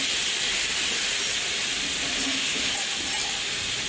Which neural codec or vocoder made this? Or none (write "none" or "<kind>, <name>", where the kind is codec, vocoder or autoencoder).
none